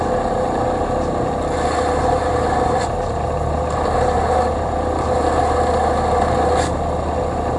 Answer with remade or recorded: recorded